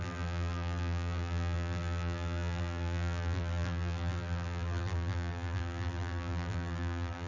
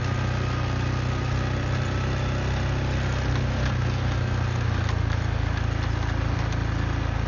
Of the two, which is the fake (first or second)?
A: first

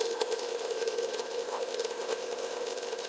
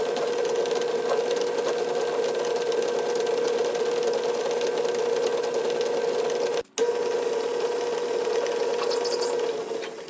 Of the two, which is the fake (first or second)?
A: first